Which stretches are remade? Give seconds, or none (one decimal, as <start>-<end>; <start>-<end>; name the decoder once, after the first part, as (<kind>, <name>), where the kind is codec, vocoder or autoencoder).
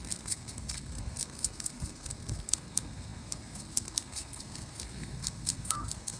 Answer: 0.0-6.2 (codec, SNAC)